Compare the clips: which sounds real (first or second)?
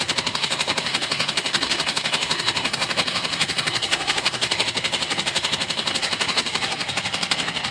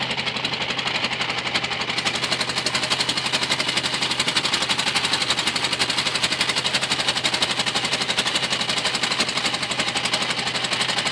second